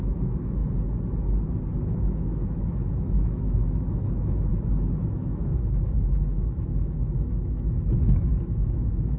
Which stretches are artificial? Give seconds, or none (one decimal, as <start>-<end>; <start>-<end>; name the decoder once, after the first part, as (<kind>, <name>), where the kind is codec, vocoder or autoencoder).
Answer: 0.0-0.6 (autoencoder, DAC-VAE); 1.8-4.5; 5.1-9.2